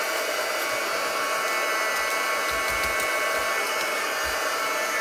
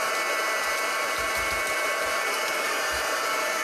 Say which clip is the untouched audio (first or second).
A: first